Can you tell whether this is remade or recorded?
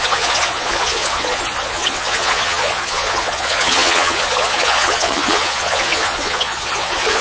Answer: remade